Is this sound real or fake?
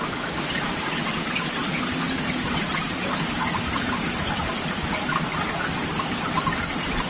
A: real